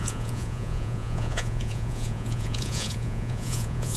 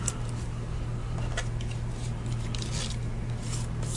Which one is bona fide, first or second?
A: second